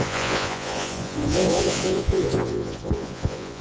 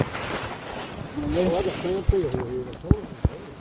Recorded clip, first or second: second